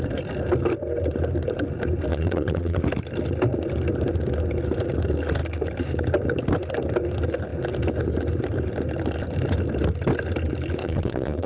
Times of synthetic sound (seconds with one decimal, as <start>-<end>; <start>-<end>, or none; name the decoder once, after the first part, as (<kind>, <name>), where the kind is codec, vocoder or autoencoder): 2.1-2.8 (vocoder, Vocos); 10.8-11.5